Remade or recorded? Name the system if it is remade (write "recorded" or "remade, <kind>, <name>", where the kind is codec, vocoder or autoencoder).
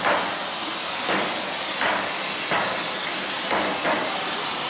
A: recorded